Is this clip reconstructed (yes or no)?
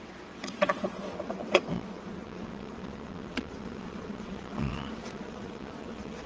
yes